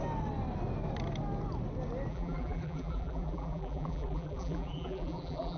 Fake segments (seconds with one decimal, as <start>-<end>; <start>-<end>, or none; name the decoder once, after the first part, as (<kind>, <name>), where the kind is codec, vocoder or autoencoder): 2.1-5.6 (vocoder, BigVGAN v2)